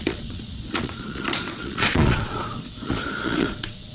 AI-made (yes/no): yes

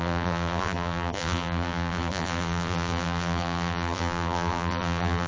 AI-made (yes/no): yes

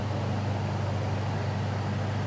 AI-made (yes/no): no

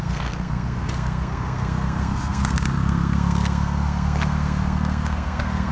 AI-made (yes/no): yes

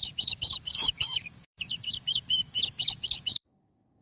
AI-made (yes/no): yes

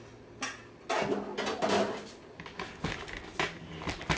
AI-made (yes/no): no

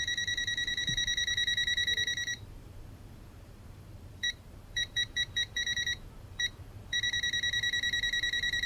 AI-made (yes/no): yes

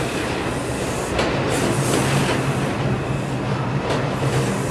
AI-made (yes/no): no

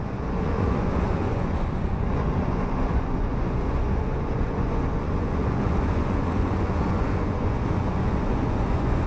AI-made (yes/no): yes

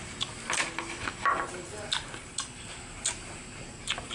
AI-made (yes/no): no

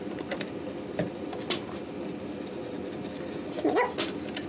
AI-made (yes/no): no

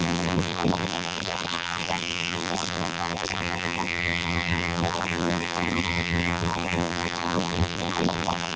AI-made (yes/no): yes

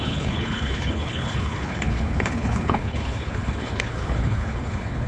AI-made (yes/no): yes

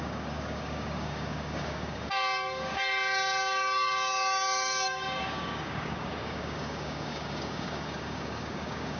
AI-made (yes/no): yes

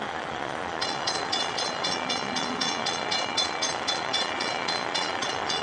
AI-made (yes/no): yes